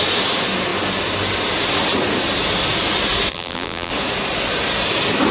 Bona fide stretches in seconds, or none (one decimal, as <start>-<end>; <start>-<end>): 0.0-3.3; 3.9-5.3